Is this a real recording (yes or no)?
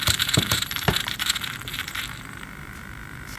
no